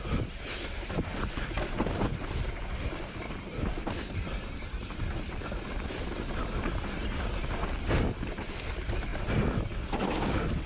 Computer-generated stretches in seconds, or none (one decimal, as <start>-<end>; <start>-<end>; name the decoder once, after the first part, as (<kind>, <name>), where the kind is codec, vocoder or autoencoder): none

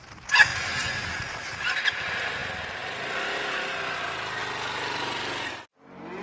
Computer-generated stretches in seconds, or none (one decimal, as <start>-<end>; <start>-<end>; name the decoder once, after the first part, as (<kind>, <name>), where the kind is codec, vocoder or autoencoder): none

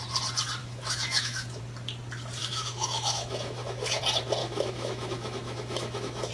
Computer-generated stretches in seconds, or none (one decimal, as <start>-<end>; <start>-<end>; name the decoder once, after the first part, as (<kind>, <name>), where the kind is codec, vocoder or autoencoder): 0.6-1.6 (autoencoder, DAC-VAE); 2.4-4.0; 4.4-6.3